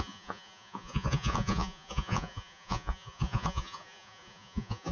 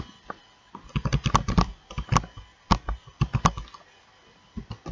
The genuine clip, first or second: second